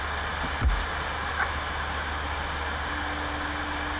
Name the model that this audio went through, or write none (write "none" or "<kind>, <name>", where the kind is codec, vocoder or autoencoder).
none